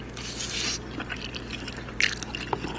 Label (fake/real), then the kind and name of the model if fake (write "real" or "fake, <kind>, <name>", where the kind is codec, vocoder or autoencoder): real